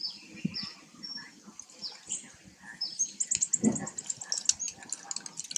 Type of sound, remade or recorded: recorded